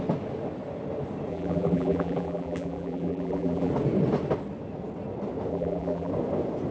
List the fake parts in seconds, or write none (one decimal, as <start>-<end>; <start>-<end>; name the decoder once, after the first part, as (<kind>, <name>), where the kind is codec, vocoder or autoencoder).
1.3-3.7 (vocoder, BigVGAN v2); 5.5-6.1